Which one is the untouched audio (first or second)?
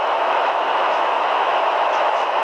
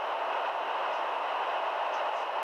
second